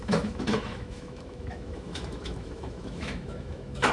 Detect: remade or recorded remade